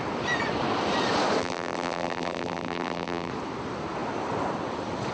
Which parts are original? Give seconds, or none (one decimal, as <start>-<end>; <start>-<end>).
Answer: 0.0-1.4; 3.3-5.1